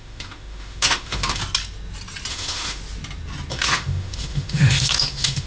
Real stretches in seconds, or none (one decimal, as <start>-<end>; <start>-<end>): 1.4-2.3; 2.8-3.5